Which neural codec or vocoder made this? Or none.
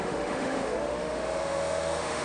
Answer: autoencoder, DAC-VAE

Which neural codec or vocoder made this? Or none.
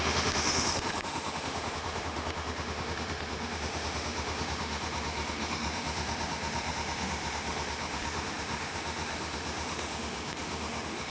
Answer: autoencoder, DAC-VAE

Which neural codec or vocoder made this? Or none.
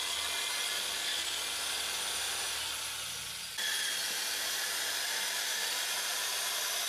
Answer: none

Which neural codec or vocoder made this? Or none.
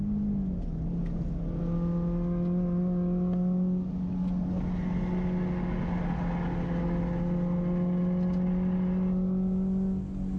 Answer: none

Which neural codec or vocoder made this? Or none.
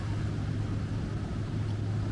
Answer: none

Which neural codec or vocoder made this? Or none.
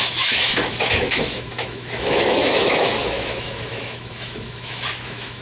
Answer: autoencoder, DAC-VAE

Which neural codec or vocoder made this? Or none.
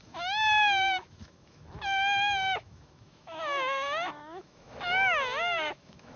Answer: autoencoder, DAC-VAE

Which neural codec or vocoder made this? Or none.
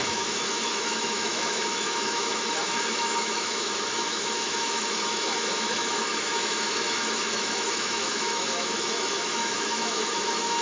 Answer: autoencoder, DAC-VAE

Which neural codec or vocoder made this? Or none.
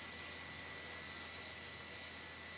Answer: none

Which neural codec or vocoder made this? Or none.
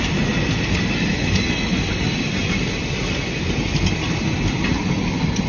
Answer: none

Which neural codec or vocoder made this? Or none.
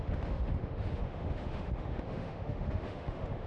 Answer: autoencoder, DAC-VAE